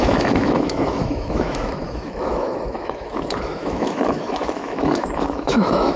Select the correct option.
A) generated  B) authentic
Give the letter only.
A